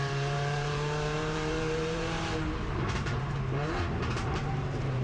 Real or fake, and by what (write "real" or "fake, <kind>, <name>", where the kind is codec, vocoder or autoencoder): fake, vocoder, BigVGAN v2